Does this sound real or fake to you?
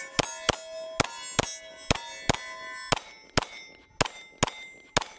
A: real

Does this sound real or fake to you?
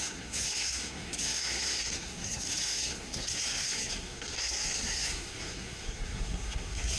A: fake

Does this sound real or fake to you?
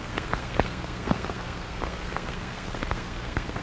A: fake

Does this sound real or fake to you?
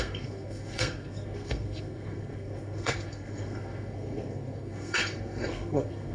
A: fake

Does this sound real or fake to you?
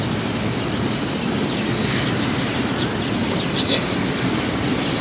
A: real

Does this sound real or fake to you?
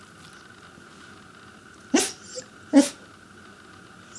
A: real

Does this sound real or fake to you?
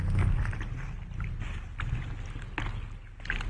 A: real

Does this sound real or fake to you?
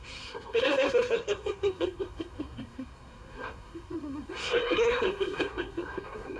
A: fake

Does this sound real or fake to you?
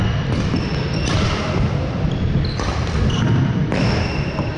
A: real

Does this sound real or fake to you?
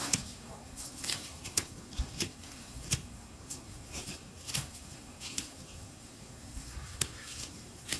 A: fake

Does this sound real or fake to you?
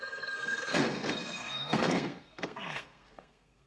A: fake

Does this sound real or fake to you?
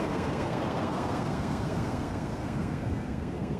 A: fake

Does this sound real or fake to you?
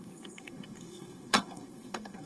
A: fake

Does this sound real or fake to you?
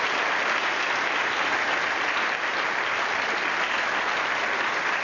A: real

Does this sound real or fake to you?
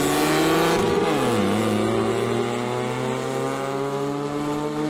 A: real